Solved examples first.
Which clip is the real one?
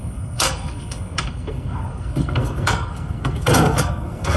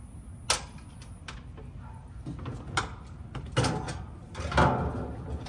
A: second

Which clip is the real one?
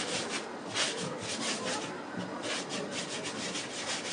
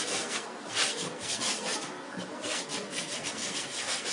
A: first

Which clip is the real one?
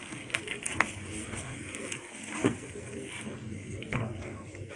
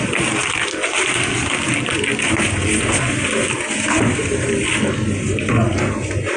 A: second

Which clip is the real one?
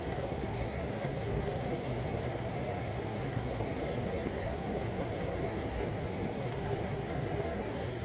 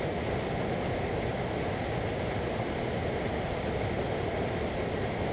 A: second